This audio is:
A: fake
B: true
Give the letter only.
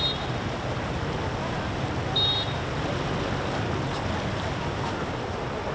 B